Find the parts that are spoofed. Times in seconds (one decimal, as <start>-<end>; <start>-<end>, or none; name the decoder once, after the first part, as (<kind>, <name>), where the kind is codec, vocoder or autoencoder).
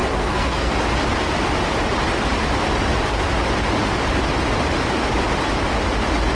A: 0.0-0.7 (codec, SNAC)